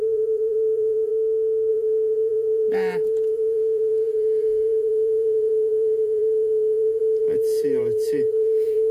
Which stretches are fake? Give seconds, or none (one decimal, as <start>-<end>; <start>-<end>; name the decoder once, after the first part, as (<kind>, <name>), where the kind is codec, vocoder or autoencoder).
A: 0.0-1.1 (vocoder, Vocos); 1.7-8.9